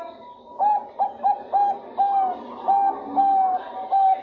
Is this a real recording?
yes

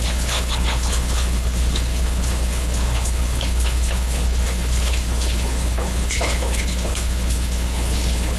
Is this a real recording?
no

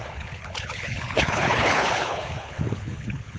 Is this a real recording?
no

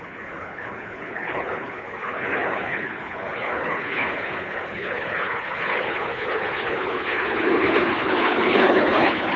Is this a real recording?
no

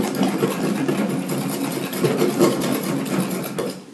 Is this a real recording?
yes